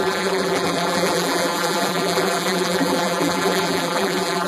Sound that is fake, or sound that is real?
fake